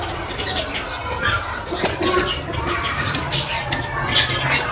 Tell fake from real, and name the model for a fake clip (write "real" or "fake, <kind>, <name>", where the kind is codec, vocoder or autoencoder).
real